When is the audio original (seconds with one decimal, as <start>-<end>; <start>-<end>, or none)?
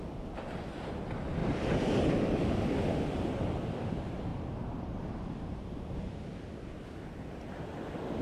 0.0-1.4; 2.1-4.3; 6.2-8.2